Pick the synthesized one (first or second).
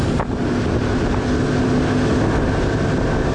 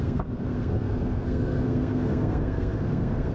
second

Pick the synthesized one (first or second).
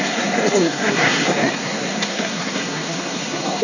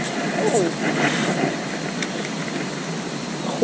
first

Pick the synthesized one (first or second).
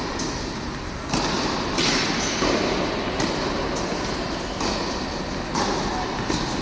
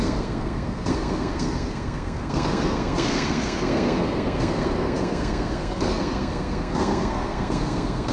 second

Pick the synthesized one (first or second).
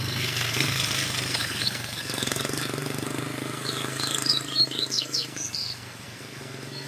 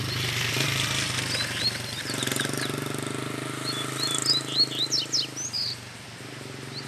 first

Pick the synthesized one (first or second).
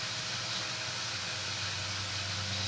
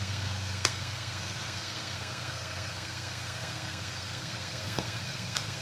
second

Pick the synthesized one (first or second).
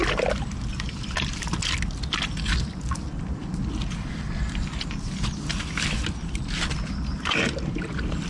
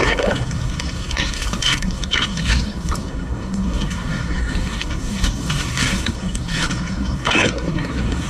second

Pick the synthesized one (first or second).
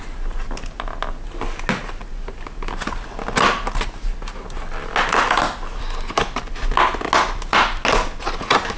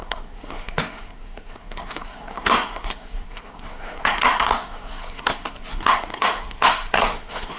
second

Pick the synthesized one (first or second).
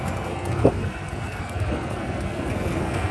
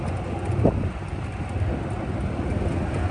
first